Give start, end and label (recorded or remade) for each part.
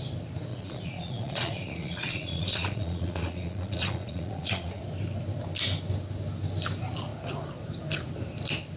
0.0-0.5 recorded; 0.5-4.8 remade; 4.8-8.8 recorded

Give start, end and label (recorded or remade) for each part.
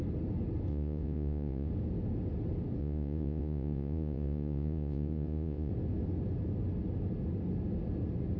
0.0-0.7 recorded; 0.7-1.7 remade; 1.7-2.8 recorded; 2.8-5.7 remade; 5.7-8.4 recorded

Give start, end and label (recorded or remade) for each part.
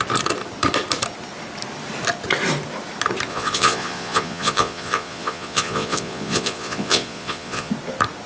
0.0-3.3 recorded; 3.3-7.7 remade; 7.7-8.3 recorded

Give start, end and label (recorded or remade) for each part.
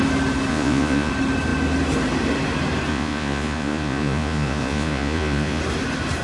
0.0-0.5 recorded; 0.5-1.1 remade; 1.1-2.9 recorded; 2.9-5.6 remade; 5.6-6.2 recorded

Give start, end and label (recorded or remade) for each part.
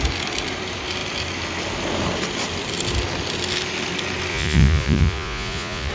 0.0-4.3 recorded; 4.3-5.9 remade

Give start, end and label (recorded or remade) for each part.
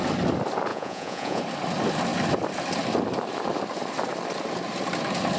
0.0-0.7 recorded; 0.7-1.4 remade; 1.4-5.4 recorded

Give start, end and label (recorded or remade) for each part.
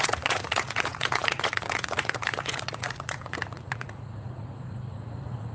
0.0-5.5 remade